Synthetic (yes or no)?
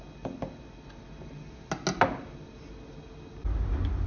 no